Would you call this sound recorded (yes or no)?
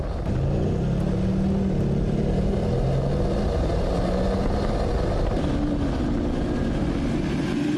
yes